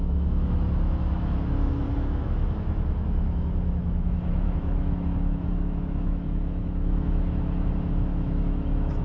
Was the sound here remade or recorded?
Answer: remade